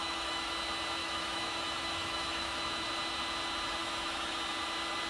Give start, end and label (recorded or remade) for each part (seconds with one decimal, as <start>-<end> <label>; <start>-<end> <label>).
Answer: 0.0-0.5 remade; 0.5-1.0 recorded; 1.0-2.6 remade; 2.6-3.8 recorded; 3.8-4.4 remade; 4.4-5.1 recorded